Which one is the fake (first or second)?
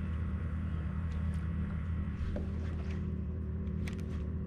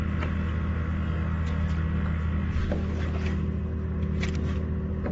first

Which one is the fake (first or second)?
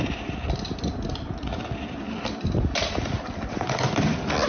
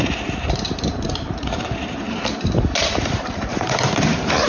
second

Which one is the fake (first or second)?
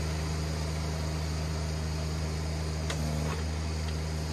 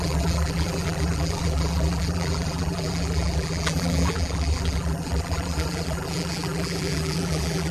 second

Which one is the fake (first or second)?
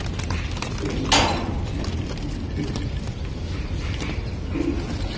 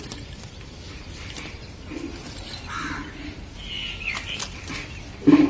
second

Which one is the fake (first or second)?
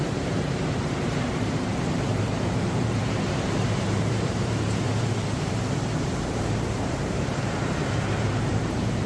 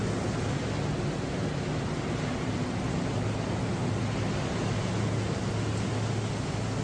first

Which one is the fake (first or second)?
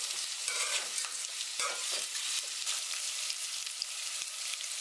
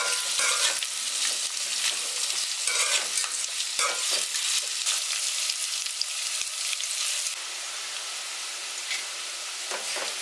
first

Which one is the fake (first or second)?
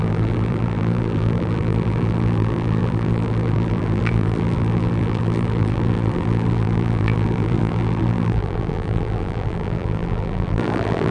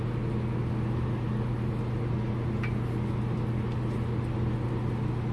first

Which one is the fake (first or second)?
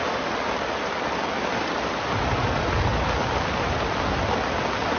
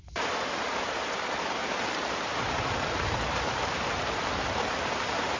second